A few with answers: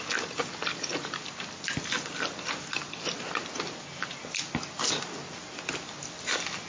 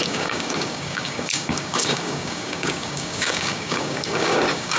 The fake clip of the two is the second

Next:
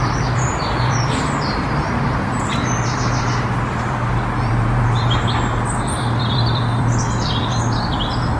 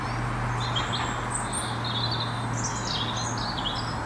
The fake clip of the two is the first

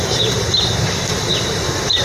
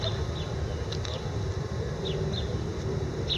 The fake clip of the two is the first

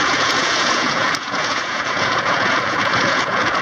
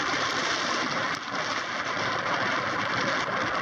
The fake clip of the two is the first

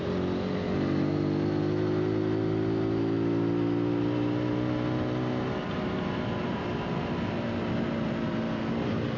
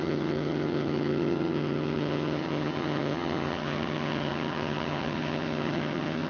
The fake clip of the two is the second